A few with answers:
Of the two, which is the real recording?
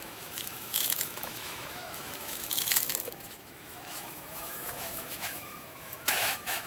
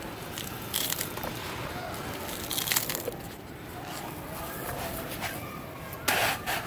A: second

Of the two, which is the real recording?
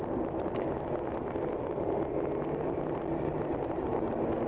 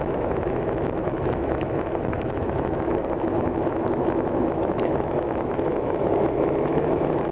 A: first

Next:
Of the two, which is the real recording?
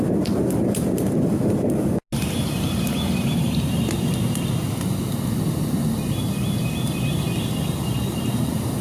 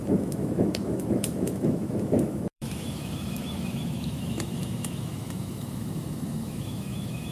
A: first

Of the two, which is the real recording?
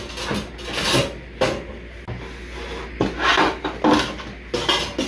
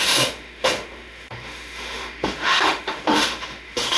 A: first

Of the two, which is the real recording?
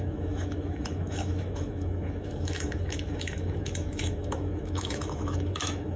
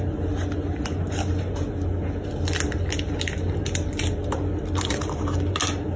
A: second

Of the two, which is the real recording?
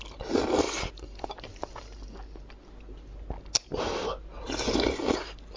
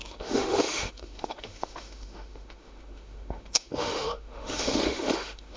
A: first